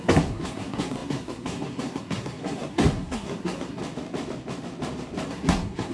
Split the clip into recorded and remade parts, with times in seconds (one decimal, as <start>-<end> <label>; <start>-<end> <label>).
0.0-3.8 remade; 3.8-5.3 recorded; 5.3-5.9 remade